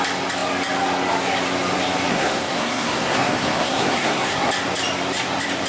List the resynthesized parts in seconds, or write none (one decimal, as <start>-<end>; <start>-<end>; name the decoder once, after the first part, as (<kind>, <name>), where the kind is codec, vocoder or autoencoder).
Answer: 2.1-4.5 (codec, SNAC)